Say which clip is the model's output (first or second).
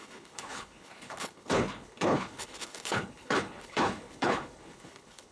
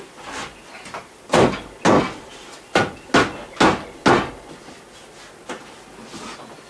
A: first